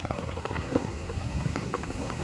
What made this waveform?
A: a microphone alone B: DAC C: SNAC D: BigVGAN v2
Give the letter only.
C